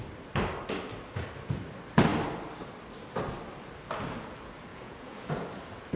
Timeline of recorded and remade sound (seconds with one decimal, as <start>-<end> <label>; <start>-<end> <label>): 0.0-4.7 recorded; 4.7-5.4 remade; 5.4-6.0 recorded